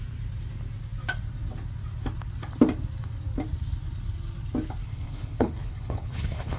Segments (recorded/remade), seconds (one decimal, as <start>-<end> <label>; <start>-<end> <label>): 0.0-4.8 recorded; 4.8-6.6 remade